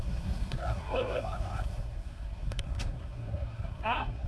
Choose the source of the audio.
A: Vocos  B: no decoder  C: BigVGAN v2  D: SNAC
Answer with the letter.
D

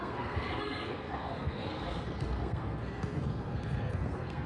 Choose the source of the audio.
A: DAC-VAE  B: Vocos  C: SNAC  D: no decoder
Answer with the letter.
C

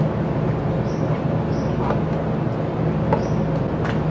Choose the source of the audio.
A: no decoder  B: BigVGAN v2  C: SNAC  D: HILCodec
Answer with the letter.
A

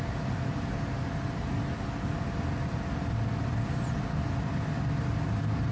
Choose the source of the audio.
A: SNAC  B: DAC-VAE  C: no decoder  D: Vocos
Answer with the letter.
C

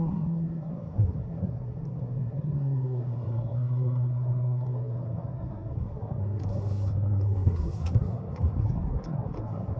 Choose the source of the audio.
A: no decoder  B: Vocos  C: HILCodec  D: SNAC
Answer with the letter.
D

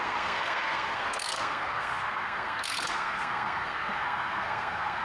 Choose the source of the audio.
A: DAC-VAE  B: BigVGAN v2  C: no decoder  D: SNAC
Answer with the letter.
D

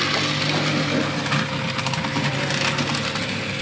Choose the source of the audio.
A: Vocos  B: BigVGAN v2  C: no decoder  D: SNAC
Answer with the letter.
C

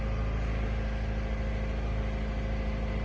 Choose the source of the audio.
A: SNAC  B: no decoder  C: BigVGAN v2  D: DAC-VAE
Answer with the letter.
B